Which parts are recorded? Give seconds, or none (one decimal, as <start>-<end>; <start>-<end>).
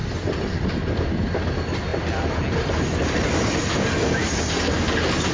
0.0-5.3